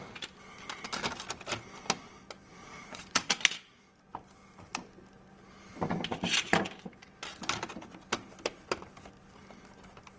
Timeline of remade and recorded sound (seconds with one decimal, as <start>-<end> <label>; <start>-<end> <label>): 0.0-2.5 recorded; 2.5-3.3 remade; 3.3-10.2 recorded